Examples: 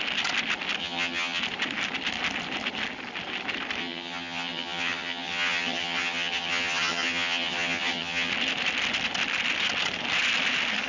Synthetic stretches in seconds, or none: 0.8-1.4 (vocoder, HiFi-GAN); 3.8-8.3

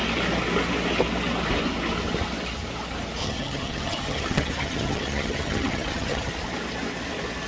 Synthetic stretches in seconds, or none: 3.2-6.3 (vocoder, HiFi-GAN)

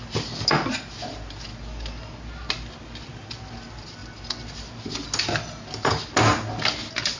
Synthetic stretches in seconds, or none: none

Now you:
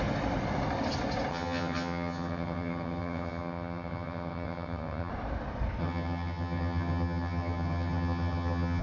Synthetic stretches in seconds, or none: 1.3-5.1 (vocoder, HiFi-GAN); 5.8-8.8